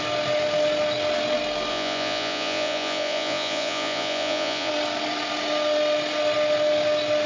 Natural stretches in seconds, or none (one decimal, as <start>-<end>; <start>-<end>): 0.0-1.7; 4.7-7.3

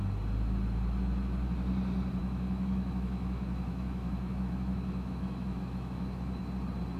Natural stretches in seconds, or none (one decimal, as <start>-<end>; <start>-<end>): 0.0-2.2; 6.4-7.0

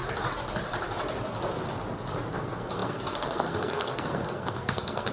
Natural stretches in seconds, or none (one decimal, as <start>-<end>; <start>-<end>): 0.0-2.3